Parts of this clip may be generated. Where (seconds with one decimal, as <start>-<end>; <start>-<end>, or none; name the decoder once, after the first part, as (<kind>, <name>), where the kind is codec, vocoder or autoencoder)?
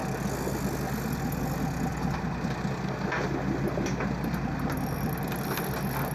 none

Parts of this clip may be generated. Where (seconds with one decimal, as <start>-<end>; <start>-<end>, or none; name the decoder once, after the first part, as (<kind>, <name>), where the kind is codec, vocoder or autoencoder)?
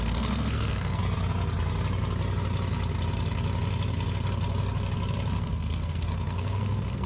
0.0-1.0 (codec, SNAC); 5.3-7.1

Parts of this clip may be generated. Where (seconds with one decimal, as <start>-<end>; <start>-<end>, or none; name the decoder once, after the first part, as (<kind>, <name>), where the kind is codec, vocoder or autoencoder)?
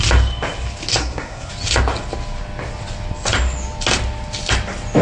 1.0-1.5 (codec, SNAC)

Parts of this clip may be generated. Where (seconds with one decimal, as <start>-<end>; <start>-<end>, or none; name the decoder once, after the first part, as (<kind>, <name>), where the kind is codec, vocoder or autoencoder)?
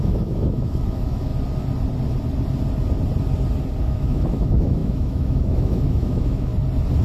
0.0-1.3 (autoencoder, DAC-VAE); 3.8-6.5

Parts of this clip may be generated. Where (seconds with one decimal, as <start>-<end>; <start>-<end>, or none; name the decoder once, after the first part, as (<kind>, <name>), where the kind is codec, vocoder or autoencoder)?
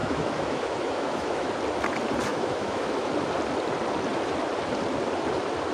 0.0-1.5 (autoencoder, DAC-VAE); 2.3-3.1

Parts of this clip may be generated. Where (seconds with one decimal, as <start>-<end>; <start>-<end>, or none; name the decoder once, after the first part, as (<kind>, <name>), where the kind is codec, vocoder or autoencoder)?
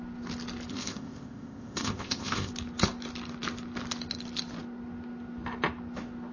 0.7-2.5 (codec, ZipCodec)